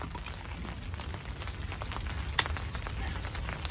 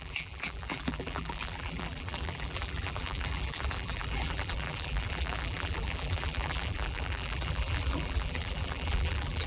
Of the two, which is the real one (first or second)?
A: first